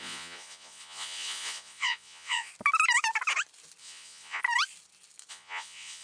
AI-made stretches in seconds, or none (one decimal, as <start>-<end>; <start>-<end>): 0.0-2.5; 3.8-4.4; 5.3-6.0